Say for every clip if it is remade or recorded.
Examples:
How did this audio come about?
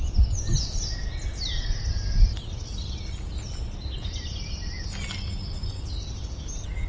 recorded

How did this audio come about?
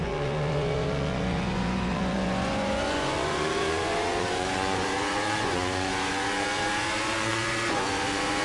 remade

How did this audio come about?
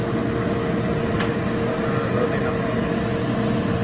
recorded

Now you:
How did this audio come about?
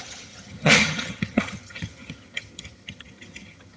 remade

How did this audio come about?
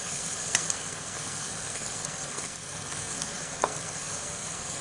remade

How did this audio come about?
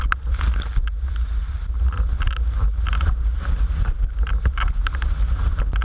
recorded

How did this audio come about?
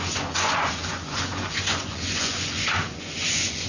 remade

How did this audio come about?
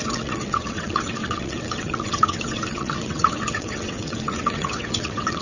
remade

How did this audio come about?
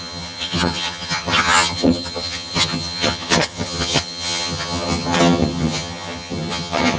remade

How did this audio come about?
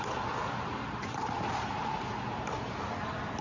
recorded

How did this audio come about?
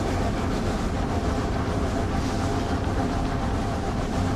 recorded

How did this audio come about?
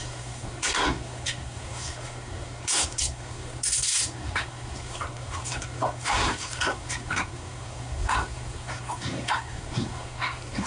remade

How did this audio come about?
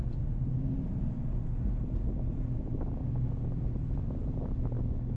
recorded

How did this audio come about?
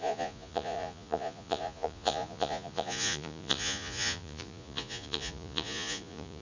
remade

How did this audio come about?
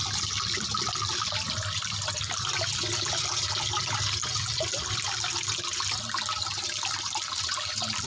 recorded